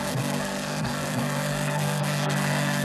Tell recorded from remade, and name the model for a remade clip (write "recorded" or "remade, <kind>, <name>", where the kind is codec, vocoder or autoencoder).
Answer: remade, codec, SNAC